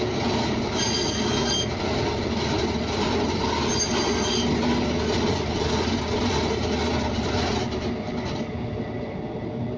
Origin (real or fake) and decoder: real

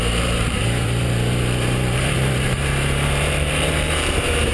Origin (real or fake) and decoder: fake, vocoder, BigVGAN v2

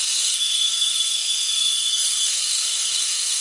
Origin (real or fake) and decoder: fake, codec, SNAC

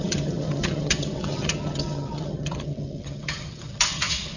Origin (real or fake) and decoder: fake, vocoder, HiFi-GAN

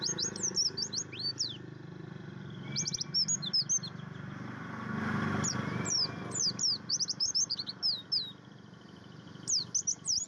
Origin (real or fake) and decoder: real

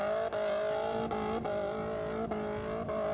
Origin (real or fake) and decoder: real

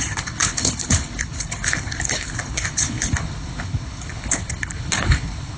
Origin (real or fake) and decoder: fake, codec, HILCodec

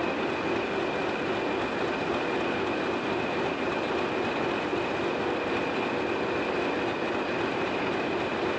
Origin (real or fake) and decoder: real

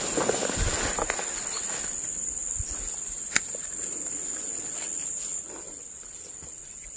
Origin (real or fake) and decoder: real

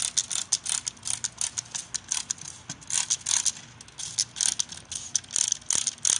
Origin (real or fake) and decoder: real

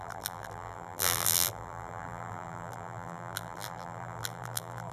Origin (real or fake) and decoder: fake, vocoder, BigVGAN v2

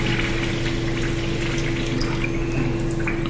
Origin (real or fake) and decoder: real